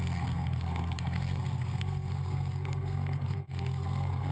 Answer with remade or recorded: remade